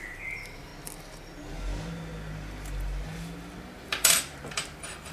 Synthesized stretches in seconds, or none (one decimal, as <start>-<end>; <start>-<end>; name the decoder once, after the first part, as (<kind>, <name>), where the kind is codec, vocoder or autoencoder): 0.0-0.7 (vocoder, BigVGAN v2); 3.8-5.1